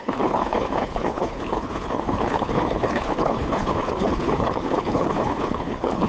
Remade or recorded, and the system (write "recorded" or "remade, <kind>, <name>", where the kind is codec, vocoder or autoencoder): remade, codec, HILCodec